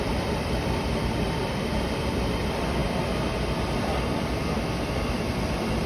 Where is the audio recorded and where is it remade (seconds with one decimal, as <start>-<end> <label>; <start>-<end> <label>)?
0.0-2.8 remade; 2.8-5.1 recorded; 5.1-5.9 remade